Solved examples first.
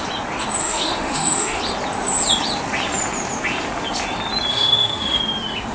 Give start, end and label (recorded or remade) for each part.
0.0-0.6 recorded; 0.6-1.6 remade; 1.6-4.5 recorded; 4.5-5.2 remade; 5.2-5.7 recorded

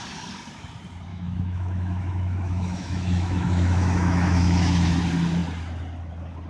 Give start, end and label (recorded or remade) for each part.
0.0-1.1 recorded; 1.1-5.0 remade; 5.0-6.5 recorded

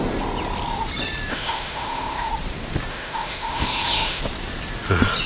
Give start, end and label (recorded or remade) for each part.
0.0-1.3 recorded; 1.3-2.3 remade; 2.3-2.9 recorded; 2.9-4.2 remade; 4.2-5.3 recorded

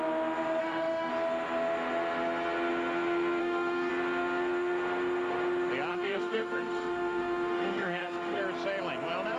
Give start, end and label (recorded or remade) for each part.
0.0-0.6 recorded; 0.6-1.1 remade; 1.1-3.4 recorded; 3.4-3.9 remade; 3.9-5.9 recorded; 5.9-8.4 remade; 8.4-9.4 recorded

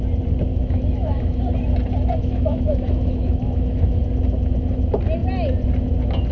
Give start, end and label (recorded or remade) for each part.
0.0-0.5 recorded; 0.5-1.4 remade; 1.4-2.2 recorded; 2.2-4.0 remade; 4.0-6.3 recorded

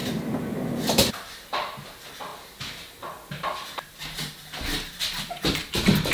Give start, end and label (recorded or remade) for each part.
0.0-6.1 recorded

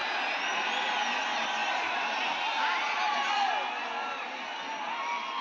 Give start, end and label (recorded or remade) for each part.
0.0-5.4 recorded

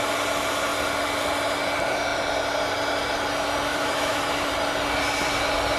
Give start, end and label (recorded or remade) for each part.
0.0-3.7 recorded; 3.7-4.5 remade; 4.5-5.8 recorded